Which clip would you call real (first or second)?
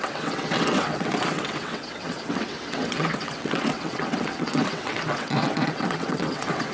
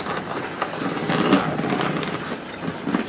second